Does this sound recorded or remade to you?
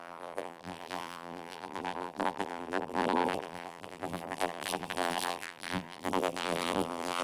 remade